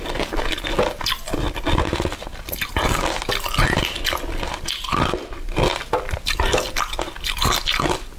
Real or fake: real